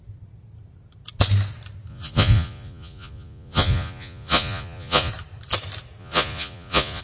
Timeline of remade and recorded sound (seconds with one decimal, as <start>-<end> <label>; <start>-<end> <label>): 0.0-1.9 recorded; 1.9-5.1 remade; 5.1-6.0 recorded; 6.0-7.0 remade